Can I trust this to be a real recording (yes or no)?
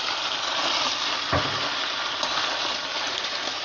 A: yes